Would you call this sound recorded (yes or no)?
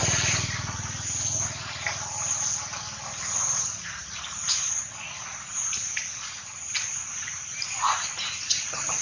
yes